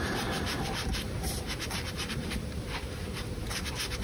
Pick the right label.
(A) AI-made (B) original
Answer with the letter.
A